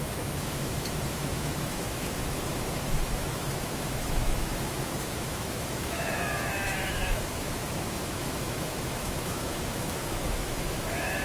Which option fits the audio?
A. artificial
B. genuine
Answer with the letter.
A